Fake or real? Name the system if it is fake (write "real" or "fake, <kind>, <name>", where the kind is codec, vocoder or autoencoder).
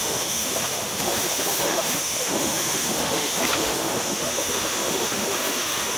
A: fake, autoencoder, DAC-VAE